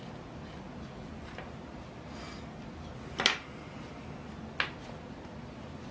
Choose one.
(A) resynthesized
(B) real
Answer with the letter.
B